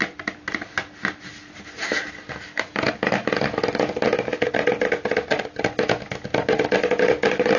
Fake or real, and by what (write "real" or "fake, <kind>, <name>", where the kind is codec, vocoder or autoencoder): real